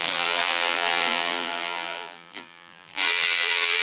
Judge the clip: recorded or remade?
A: remade